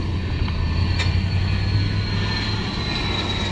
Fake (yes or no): no